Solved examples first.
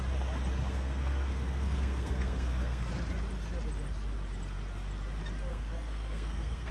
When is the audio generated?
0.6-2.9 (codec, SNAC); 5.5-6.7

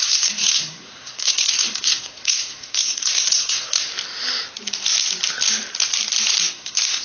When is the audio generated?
0.0-3.9 (codec, SNAC); 6.5-7.0